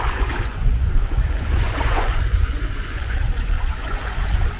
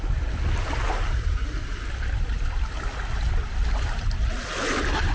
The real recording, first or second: second